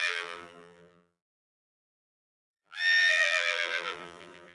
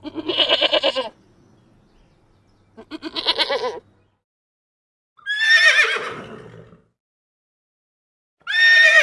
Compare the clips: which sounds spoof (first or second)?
first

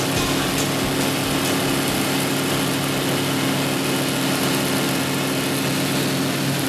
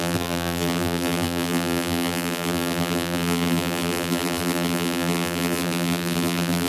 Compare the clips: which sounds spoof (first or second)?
second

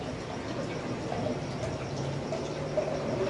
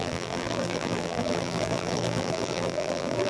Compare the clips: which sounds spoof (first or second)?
second